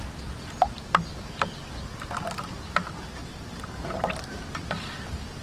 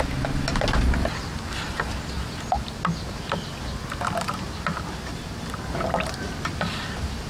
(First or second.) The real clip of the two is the second